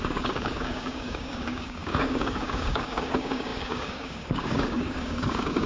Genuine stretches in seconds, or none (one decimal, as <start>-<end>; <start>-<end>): none